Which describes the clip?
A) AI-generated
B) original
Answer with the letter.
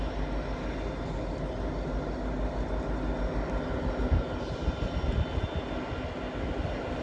B